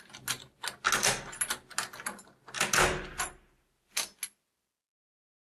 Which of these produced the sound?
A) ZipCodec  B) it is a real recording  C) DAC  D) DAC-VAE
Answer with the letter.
B